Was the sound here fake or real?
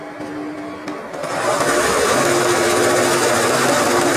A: real